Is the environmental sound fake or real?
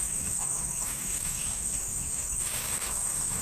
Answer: fake